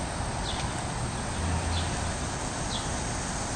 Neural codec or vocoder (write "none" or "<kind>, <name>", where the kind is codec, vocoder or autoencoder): none